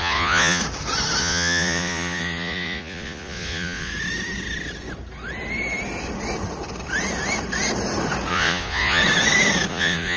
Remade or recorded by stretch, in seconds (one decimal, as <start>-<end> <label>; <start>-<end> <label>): 0.0-0.6 remade; 0.6-1.2 recorded; 1.2-3.9 remade; 3.9-8.3 recorded; 8.3-9.0 remade; 9.0-9.7 recorded; 9.7-10.2 remade